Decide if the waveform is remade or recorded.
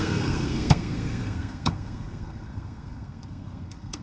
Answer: remade